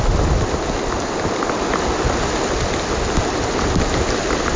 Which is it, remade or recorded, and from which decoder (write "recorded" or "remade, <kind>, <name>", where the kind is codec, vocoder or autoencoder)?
recorded